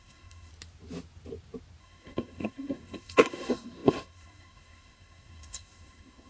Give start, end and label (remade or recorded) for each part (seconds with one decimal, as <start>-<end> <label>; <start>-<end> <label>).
0.0-0.5 remade; 0.5-1.8 recorded; 1.8-6.3 remade

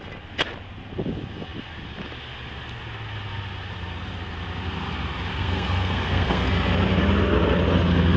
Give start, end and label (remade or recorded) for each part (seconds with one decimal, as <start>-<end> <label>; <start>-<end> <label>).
0.0-5.3 recorded; 5.3-6.5 remade; 6.5-8.2 recorded